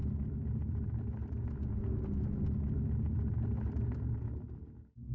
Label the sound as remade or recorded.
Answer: recorded